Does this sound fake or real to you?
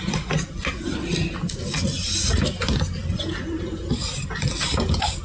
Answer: real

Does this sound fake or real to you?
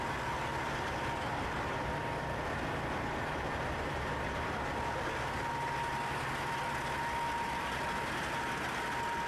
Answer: real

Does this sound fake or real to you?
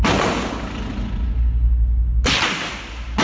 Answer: real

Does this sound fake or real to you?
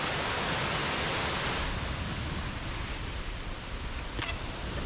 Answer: real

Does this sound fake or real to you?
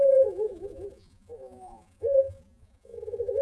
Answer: fake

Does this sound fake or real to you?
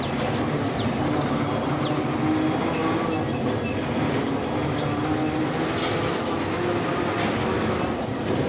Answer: real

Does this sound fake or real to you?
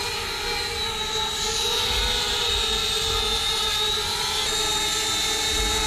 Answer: real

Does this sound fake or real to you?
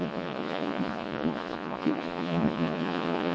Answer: fake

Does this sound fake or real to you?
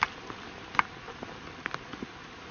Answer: real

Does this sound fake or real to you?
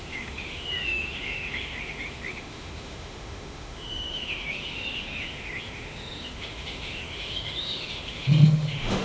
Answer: fake